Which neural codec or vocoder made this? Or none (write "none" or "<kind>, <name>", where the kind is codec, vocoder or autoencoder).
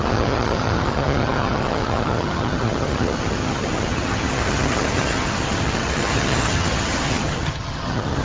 vocoder, HiFi-GAN